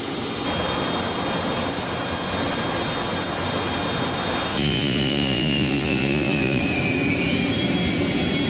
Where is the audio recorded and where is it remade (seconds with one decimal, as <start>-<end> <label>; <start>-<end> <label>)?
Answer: 0.0-4.5 recorded; 4.5-6.6 remade; 6.6-8.5 recorded

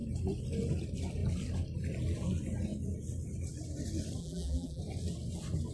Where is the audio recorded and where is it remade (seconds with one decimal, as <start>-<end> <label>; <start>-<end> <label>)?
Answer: 0.0-4.2 recorded; 4.2-4.8 remade; 4.8-5.7 recorded

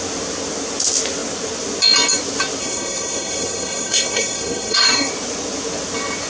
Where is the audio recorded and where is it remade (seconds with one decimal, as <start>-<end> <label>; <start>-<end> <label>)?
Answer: 0.0-2.6 recorded; 2.6-5.1 remade; 5.1-6.3 recorded

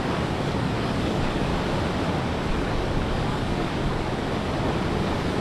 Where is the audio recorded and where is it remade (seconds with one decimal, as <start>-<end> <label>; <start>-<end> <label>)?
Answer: 0.0-1.5 remade; 1.5-2.5 recorded; 2.5-4.2 remade; 4.2-5.0 recorded; 5.0-5.4 remade

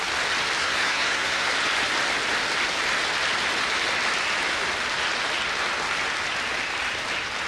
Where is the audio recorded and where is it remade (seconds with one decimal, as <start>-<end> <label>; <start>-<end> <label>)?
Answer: 0.0-0.6 recorded; 0.6-1.5 remade; 1.5-7.5 recorded